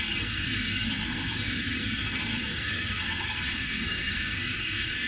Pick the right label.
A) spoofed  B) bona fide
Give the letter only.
A